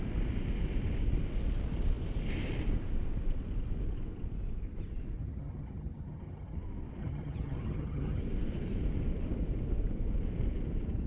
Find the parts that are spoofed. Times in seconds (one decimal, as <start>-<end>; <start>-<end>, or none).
5.2-6.6; 7.0-8.2